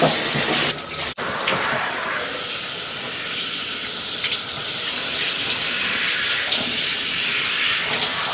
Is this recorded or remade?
remade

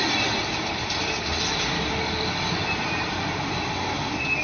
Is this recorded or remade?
recorded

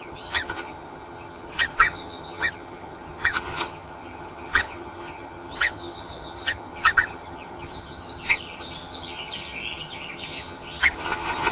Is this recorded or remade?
remade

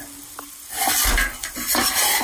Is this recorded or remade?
recorded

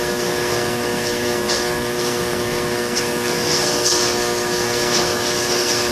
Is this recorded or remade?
remade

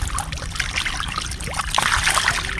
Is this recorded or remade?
recorded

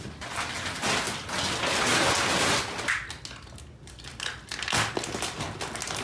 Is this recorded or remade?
recorded